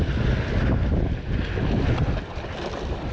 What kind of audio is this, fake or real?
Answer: real